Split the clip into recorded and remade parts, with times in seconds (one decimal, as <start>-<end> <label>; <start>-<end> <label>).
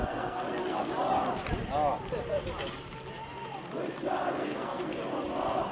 0.0-0.9 remade; 0.9-4.3 recorded; 4.3-5.0 remade; 5.0-5.7 recorded